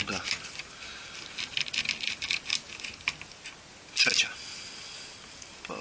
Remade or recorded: recorded